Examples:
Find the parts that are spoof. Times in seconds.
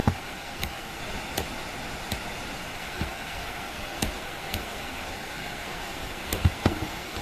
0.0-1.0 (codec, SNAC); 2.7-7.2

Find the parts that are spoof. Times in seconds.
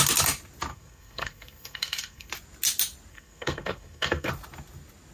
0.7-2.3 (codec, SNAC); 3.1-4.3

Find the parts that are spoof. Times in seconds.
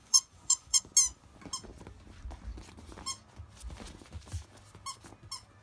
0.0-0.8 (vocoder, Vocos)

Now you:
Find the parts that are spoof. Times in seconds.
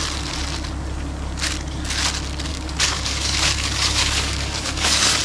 2.5-5.2 (codec, DAC)